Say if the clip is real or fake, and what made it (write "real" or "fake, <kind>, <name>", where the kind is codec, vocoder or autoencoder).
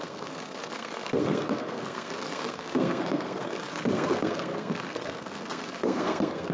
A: fake, codec, SNAC